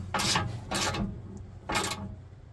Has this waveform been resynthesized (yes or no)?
no